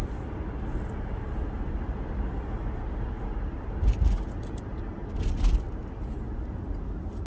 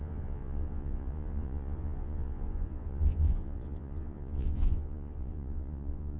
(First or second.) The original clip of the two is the first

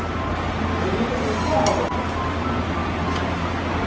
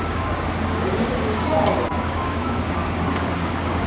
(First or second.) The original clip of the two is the first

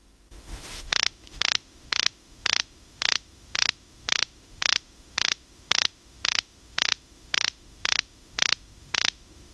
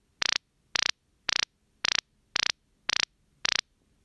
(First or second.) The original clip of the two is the second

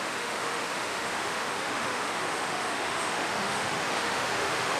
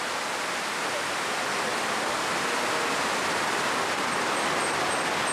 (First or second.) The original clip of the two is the second